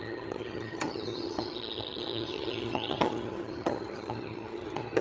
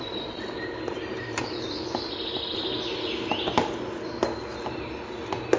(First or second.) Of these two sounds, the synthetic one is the first